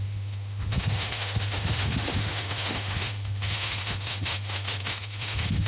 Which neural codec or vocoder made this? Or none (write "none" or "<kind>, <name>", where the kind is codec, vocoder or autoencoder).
autoencoder, DAC-VAE